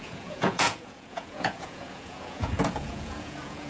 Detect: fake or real fake